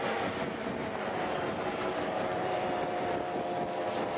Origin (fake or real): fake